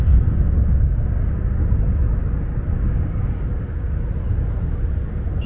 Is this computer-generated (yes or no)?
no